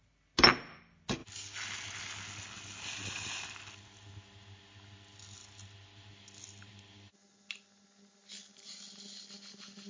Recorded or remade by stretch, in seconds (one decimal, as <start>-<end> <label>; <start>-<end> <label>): 0.0-9.9 recorded